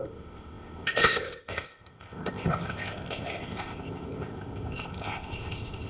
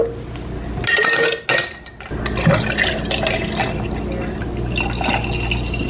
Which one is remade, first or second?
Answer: first